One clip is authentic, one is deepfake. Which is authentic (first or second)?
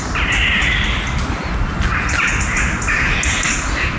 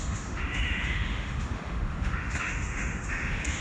first